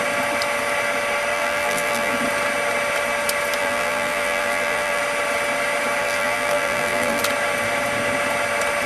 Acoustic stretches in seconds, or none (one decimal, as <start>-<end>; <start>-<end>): 0.0-1.3; 2.2-3.6; 5.0-6.0; 7.2-8.9